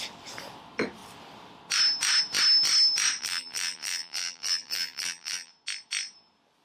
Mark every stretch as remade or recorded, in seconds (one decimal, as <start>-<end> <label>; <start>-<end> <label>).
0.0-3.2 recorded; 3.2-5.5 remade; 5.5-6.6 recorded

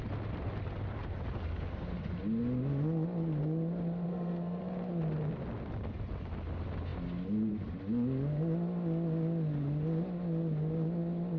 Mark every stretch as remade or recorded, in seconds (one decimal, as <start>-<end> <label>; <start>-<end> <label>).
0.0-4.1 recorded; 4.1-4.6 remade; 4.6-11.4 recorded

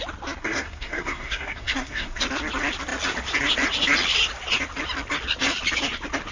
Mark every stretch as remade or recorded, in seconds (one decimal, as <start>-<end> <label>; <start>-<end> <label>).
0.0-0.4 recorded; 0.4-2.2 remade; 2.2-6.3 recorded

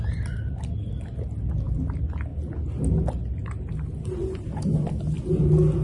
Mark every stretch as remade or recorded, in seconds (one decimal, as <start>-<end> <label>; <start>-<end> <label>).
0.0-5.8 recorded